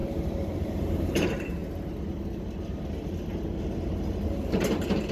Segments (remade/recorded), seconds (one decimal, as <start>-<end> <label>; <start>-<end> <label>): 0.0-1.6 remade; 1.6-5.1 recorded